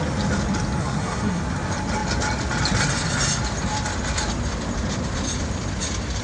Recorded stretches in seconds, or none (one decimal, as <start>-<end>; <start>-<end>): 0.0-0.8; 1.4-6.2